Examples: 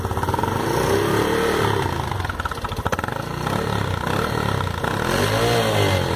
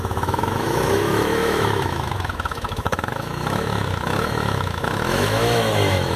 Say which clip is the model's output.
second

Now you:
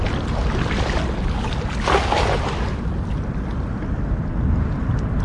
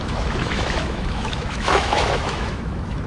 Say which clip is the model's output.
second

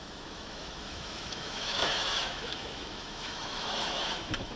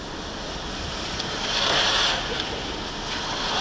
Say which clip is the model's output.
first